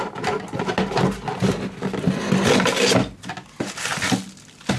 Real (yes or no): yes